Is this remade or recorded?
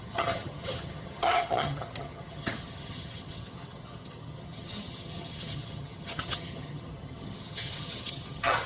remade